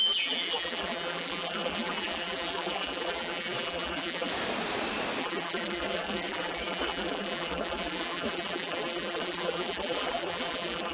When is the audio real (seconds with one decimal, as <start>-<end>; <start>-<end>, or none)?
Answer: 4.3-5.2